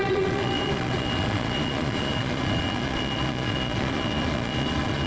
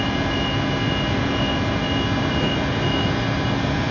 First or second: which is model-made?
first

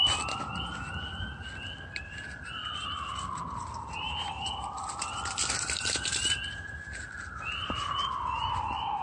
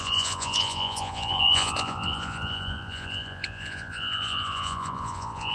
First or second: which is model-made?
second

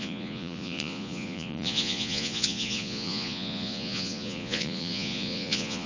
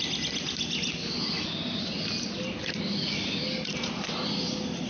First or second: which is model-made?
first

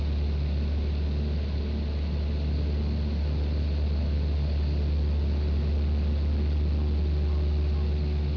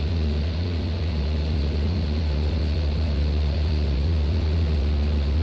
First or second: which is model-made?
second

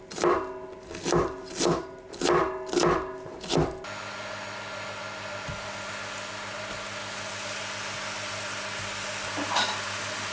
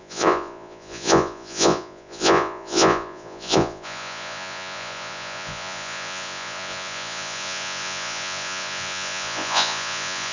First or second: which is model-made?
second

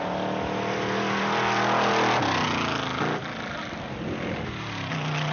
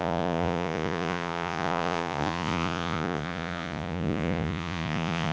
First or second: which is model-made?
second